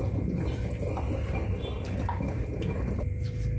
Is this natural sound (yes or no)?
yes